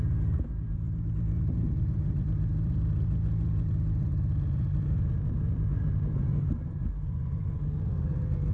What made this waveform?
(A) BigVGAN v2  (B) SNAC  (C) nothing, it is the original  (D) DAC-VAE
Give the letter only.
A